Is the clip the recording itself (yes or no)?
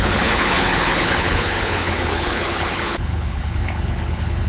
no